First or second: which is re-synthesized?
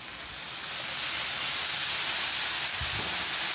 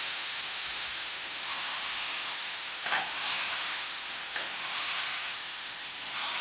second